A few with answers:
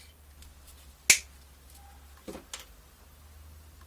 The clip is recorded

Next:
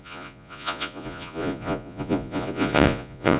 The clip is remade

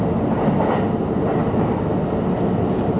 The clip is recorded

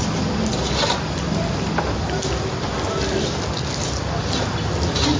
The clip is recorded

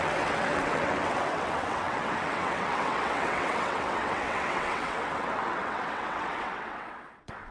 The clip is remade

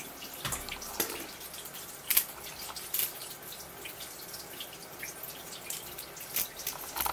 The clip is recorded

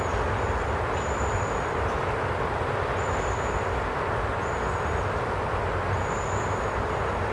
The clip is recorded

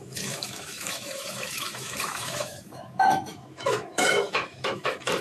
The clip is remade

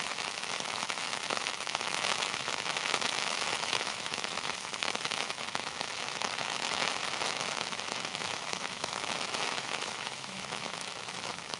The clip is remade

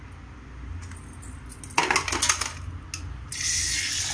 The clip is recorded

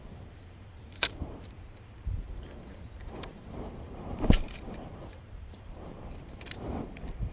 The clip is remade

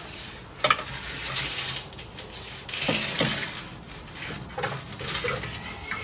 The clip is recorded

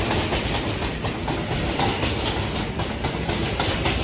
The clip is recorded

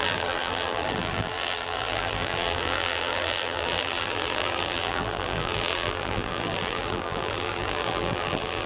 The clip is remade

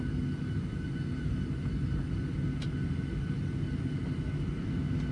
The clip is recorded